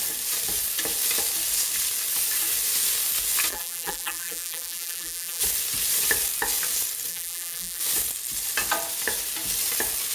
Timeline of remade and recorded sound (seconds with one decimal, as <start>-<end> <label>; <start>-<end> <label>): 0.0-3.5 recorded; 3.5-5.4 remade; 5.4-7.1 recorded; 7.1-7.8 remade; 7.8-10.1 recorded

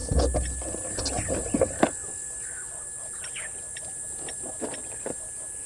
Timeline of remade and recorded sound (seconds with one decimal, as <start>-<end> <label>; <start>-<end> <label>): 0.0-5.7 recorded

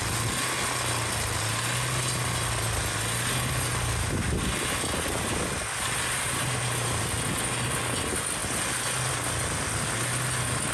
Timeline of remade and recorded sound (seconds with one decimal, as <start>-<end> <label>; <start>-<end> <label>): 0.0-10.7 recorded

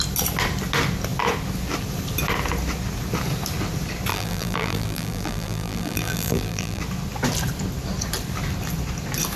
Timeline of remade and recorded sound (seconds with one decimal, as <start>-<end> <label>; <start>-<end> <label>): 0.0-4.1 recorded; 4.1-6.8 remade; 6.8-9.4 recorded

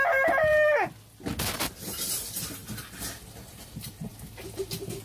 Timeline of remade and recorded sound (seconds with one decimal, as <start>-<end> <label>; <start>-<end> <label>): 0.0-0.5 remade; 0.5-1.6 recorded; 1.6-4.1 remade; 4.1-5.0 recorded

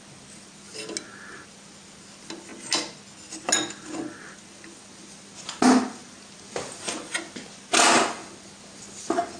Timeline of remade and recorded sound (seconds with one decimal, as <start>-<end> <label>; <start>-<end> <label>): 0.0-9.4 recorded